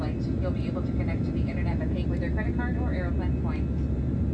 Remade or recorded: recorded